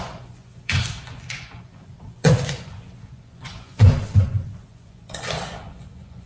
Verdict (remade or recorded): remade